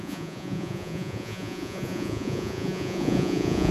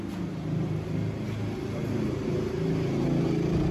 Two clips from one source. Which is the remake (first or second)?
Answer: first